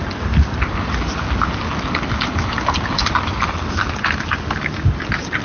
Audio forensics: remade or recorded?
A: recorded